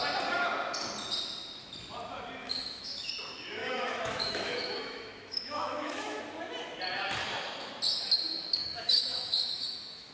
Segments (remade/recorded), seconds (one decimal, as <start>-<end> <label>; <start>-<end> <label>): 0.0-2.4 recorded; 2.4-3.1 remade; 3.1-3.6 recorded; 3.6-6.2 remade; 6.2-8.6 recorded; 8.6-10.1 remade